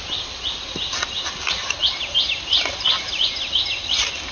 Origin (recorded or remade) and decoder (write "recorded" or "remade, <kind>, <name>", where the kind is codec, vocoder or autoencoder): recorded